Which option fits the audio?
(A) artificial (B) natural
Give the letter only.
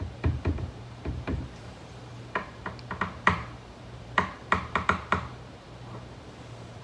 A